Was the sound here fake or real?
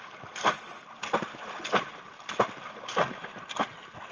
real